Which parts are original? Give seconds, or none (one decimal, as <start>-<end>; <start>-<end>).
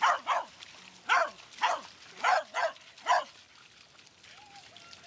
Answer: 0.0-5.1